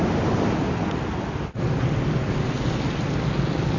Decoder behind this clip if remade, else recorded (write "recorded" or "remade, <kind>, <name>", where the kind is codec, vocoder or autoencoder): recorded